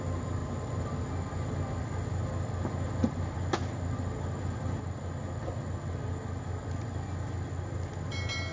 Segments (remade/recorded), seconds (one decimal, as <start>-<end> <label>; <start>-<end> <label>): 0.0-8.5 recorded